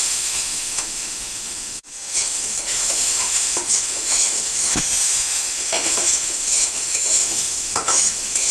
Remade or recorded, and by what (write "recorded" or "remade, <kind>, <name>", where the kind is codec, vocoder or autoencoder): remade, autoencoder, DAC-VAE